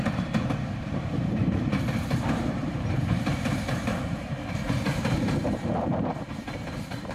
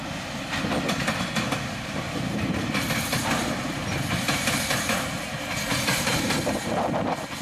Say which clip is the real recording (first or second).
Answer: second